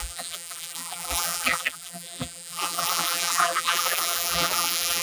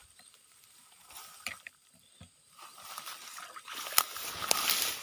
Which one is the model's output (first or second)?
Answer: first